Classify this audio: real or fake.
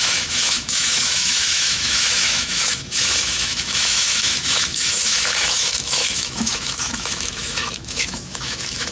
fake